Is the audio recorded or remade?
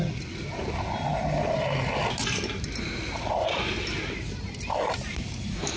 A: recorded